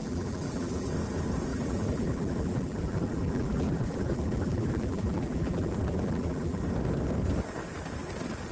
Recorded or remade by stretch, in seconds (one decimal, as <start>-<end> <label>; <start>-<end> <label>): 0.0-0.9 remade; 0.9-1.5 recorded; 1.5-6.6 remade; 6.6-8.5 recorded